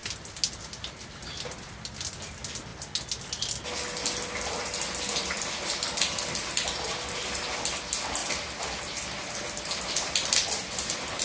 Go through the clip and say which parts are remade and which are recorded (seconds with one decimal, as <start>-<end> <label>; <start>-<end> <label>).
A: 0.0-11.2 recorded

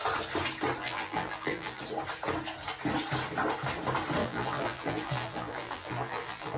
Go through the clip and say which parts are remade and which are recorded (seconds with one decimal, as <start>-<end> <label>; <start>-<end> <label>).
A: 0.0-0.8 recorded; 0.8-1.8 remade; 1.8-4.2 recorded; 4.2-6.6 remade

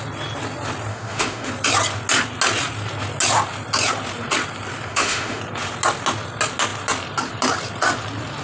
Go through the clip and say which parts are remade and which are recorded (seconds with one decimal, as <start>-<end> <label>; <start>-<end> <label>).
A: 0.0-0.9 recorded; 0.9-1.5 remade; 1.5-4.9 recorded; 4.9-5.4 remade; 5.4-8.4 recorded

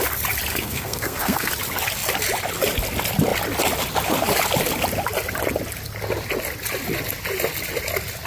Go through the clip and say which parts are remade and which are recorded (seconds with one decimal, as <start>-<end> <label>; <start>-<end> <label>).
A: 0.0-0.5 recorded; 0.5-1.5 remade; 1.5-8.3 recorded

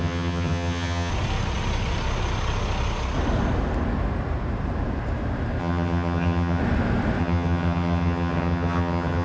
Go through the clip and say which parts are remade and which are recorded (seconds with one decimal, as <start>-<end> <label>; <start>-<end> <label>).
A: 0.0-1.1 remade; 1.1-5.6 recorded; 5.6-6.6 remade; 6.6-7.2 recorded; 7.2-9.2 remade

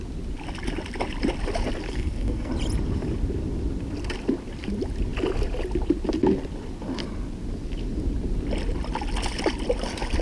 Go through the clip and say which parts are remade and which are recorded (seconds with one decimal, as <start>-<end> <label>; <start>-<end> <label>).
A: 0.0-1.9 recorded; 1.9-2.5 remade; 2.5-10.2 recorded